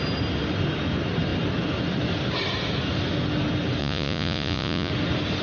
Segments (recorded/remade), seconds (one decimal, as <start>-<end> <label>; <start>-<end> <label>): 0.0-3.8 recorded; 3.8-4.9 remade; 4.9-5.4 recorded